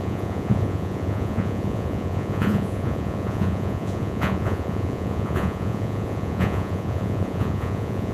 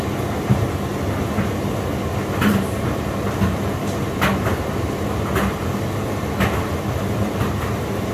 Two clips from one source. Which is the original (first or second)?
second